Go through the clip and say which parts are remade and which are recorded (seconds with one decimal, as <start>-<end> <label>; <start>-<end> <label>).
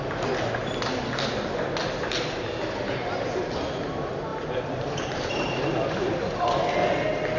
0.0-4.3 recorded; 4.3-5.6 remade; 5.6-7.4 recorded